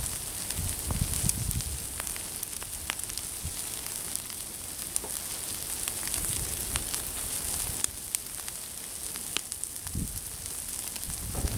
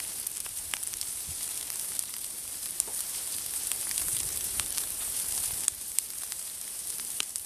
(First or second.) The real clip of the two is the first